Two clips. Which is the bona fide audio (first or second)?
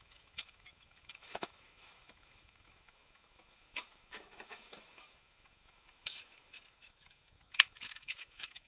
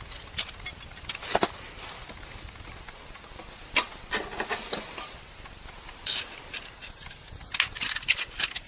second